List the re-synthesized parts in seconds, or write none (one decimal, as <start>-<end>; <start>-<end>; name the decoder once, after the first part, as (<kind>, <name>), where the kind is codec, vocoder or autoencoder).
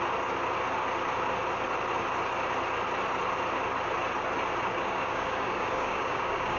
4.7-6.6 (codec, DAC)